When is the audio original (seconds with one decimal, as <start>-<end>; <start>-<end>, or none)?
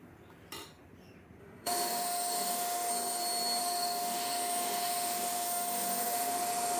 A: 0.0-1.4; 2.9-3.6